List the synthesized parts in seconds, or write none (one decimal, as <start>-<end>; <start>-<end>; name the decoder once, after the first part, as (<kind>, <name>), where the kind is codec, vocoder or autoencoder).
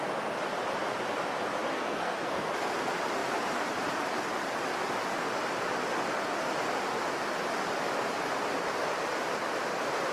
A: 1.7-2.5 (codec, SNAC)